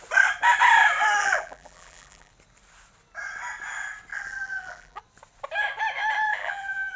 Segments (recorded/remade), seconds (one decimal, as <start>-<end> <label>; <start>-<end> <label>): 0.0-1.2 recorded; 1.2-2.3 remade; 2.3-4.1 recorded; 4.1-5.0 remade; 5.0-6.3 recorded; 6.3-7.0 remade